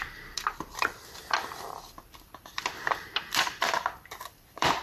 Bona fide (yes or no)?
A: no